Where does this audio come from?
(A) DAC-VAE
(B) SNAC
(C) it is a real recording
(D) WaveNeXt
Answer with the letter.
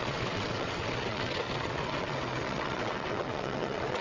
D